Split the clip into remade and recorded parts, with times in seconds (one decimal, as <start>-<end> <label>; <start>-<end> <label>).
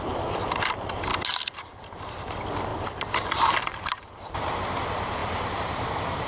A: 0.0-6.3 recorded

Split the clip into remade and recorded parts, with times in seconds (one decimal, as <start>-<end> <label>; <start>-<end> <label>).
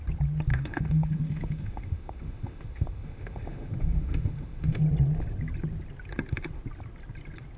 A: 0.0-0.5 recorded; 0.5-4.8 remade; 4.8-7.6 recorded